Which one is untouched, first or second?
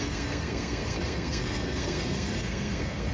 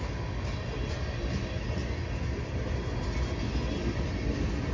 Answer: second